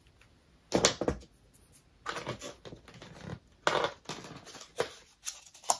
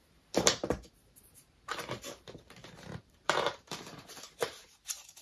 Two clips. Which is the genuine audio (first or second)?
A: first